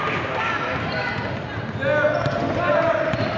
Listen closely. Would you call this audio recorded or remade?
recorded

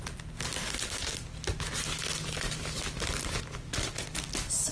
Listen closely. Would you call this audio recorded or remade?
recorded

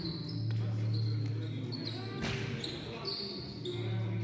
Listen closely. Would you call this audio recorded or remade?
recorded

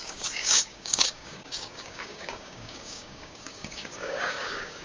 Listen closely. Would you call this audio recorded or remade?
remade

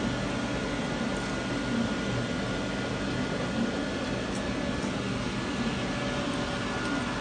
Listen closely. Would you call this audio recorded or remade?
recorded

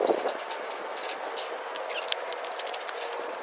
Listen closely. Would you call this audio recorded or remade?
recorded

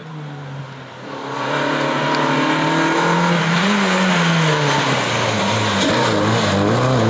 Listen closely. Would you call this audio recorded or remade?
recorded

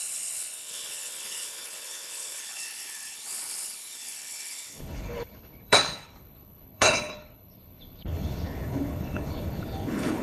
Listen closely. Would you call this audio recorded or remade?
remade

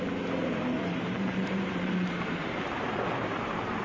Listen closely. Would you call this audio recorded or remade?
remade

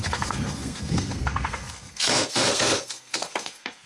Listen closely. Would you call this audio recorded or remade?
remade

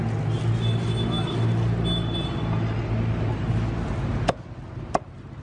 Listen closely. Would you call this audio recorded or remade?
recorded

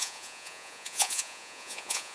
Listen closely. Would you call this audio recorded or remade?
remade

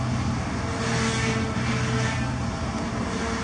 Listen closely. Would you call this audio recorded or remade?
recorded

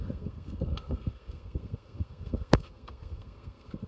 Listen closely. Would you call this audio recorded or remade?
remade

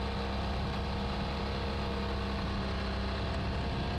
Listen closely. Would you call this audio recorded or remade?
recorded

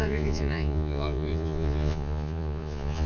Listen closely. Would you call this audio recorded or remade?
remade